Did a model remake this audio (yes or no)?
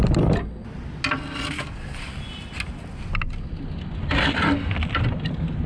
no